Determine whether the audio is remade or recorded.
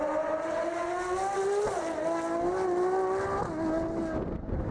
recorded